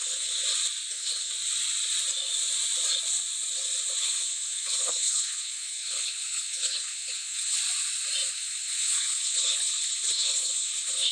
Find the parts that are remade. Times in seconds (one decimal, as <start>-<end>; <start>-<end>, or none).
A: 0.0-0.4; 0.9-1.3; 4.0-7.6; 8.3-11.1